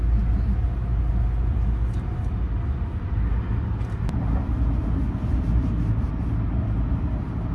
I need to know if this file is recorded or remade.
recorded